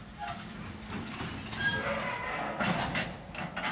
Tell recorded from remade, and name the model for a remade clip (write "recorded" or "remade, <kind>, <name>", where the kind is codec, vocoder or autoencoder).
recorded